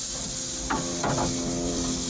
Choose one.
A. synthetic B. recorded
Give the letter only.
A